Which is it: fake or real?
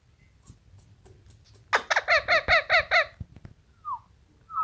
real